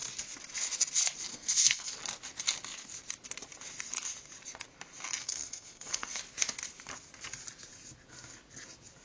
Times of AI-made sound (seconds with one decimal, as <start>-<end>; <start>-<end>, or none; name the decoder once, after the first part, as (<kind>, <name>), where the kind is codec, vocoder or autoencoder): 1.3-2.0 (codec, SNAC); 5.2-6.2